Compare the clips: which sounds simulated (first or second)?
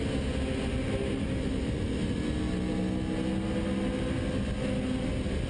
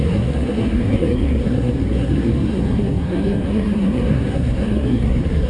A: second